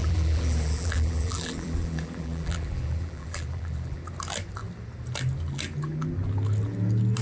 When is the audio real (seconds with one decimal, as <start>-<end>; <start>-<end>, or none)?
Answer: 4.0-7.2